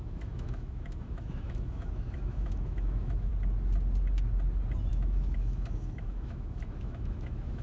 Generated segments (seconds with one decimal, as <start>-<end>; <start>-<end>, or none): 0.0-3.3; 4.9-7.6